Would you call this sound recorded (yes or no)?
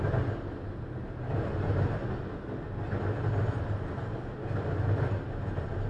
yes